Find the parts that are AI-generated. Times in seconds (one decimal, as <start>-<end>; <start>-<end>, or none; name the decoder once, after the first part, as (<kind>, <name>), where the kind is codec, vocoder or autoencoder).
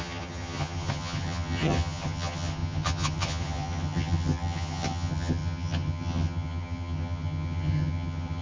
0.0-8.4 (vocoder, HiFi-GAN)